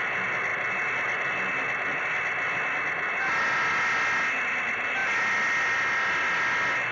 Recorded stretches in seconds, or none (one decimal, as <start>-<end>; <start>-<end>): 0.0-6.9